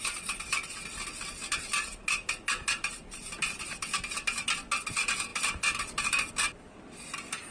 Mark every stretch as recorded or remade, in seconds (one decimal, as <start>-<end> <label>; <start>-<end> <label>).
0.0-7.5 recorded